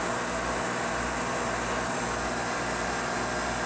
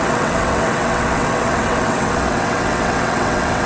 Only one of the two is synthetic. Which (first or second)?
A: second